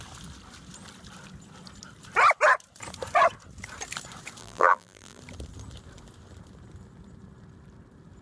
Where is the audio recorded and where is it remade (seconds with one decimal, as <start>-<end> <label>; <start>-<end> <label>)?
0.0-4.4 recorded; 4.4-5.2 remade; 5.2-8.2 recorded

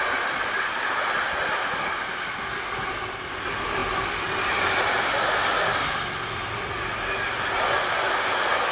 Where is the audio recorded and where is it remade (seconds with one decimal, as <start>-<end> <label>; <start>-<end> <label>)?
0.0-8.7 recorded

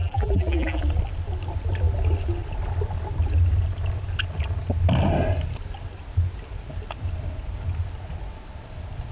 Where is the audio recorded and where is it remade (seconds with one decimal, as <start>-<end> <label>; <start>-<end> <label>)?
0.0-0.8 remade; 0.8-9.1 recorded

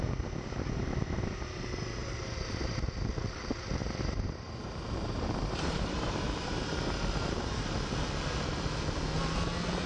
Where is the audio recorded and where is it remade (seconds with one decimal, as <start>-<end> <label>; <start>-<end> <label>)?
0.0-2.0 recorded; 2.0-3.1 remade; 3.1-3.8 recorded; 3.8-7.7 remade; 7.7-9.9 recorded

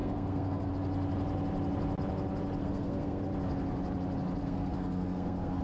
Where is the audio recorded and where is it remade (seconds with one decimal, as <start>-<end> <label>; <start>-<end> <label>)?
0.0-0.7 remade; 0.7-2.6 recorded; 2.6-3.2 remade; 3.2-4.4 recorded; 4.4-5.6 remade

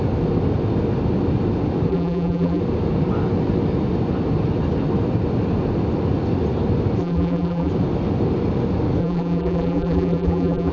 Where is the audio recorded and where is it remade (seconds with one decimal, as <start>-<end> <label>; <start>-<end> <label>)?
0.0-1.9 recorded; 1.9-2.6 remade; 2.6-7.0 recorded; 7.0-7.7 remade; 7.7-9.0 recorded; 9.0-10.7 remade

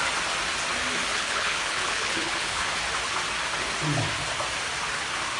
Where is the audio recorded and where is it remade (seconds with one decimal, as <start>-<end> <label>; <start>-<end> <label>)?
0.0-1.1 recorded; 1.1-2.6 remade; 2.6-5.4 recorded

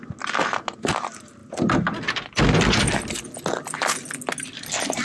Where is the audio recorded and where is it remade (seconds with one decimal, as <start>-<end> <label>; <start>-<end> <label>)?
0.0-5.0 recorded